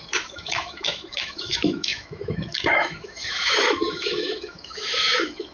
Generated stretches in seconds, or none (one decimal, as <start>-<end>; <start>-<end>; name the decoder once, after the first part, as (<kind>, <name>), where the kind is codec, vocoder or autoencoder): 0.0-5.5 (autoencoder, DAC-VAE)